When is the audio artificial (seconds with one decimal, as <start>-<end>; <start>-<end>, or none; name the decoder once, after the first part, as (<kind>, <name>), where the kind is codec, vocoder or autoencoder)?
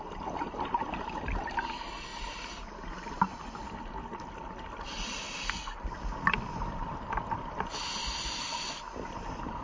none